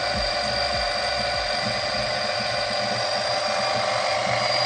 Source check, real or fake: real